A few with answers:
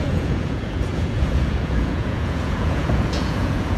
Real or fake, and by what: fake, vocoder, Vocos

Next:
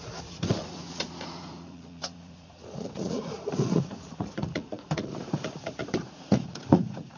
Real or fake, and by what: fake, vocoder, Vocos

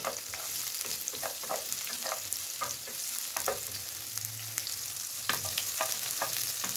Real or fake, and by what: real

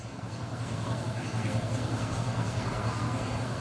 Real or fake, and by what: fake, codec, SNAC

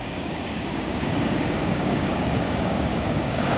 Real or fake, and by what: fake, codec, DAC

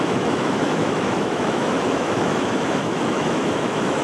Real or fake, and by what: fake, autoencoder, DAC-VAE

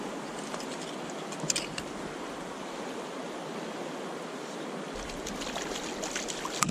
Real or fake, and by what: real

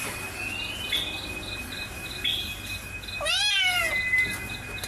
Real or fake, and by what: real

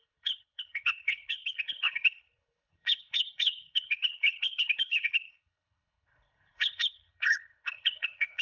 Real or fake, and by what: fake, codec, HILCodec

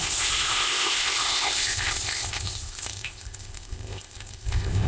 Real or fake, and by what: fake, codec, ZipCodec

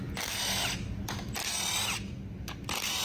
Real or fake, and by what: real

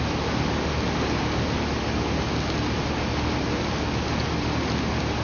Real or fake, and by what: real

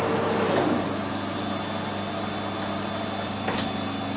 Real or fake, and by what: real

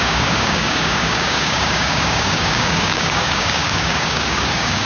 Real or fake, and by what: fake, codec, DAC